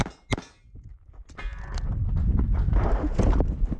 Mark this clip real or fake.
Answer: real